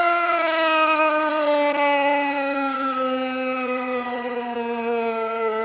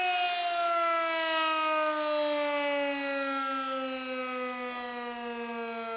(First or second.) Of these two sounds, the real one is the second